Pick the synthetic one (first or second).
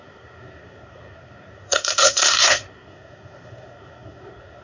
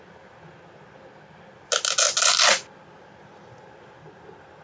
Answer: first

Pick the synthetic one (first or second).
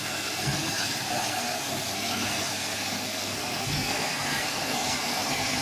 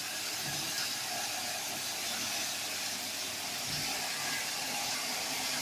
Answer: first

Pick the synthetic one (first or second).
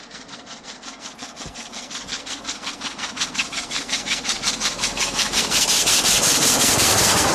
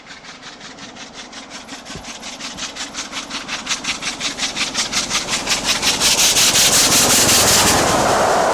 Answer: first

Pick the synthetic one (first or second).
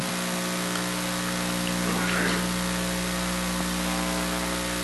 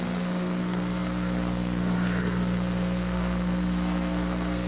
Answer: second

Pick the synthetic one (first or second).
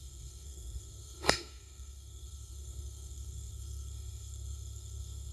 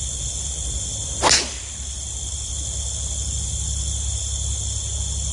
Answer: first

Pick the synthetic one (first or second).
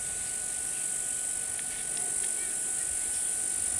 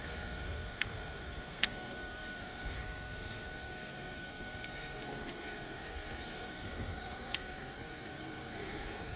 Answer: second